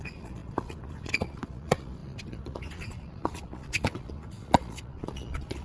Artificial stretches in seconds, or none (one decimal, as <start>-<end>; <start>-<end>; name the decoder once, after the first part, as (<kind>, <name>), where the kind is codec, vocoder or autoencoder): 0.0-5.6 (vocoder, Vocos)